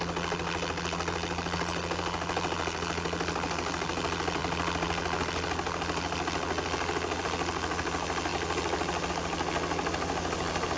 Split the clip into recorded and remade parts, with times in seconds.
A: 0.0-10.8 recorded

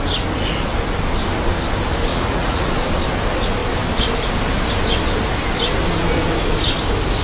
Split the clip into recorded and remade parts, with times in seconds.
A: 0.0-2.1 recorded; 2.1-2.7 remade; 2.7-7.2 recorded

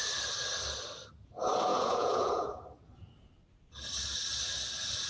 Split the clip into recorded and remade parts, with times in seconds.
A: 0.0-1.7 recorded; 1.7-2.6 remade; 2.6-5.1 recorded

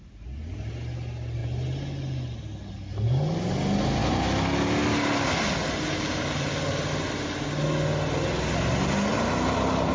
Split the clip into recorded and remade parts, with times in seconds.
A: 0.0-9.9 recorded

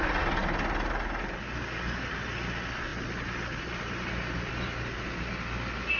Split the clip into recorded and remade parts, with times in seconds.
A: 0.0-6.0 recorded

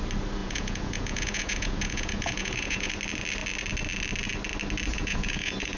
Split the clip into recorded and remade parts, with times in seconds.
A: 0.0-0.4 recorded; 0.4-2.9 remade; 2.9-4.9 recorded; 4.9-5.8 remade

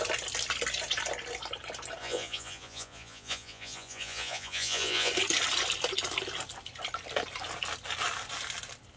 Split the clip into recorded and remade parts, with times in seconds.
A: 0.0-2.0 recorded; 2.0-5.1 remade; 5.1-9.0 recorded

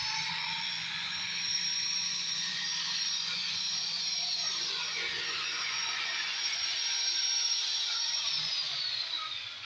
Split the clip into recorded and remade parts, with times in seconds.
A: 0.0-9.6 remade